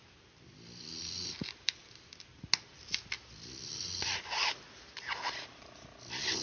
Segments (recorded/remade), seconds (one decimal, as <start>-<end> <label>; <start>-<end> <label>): 0.0-1.8 remade; 1.8-2.7 recorded; 2.7-6.4 remade